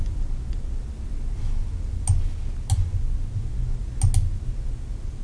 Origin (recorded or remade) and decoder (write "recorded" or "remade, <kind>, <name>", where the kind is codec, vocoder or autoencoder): recorded